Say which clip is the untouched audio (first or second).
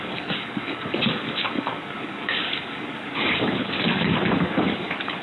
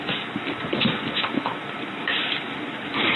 second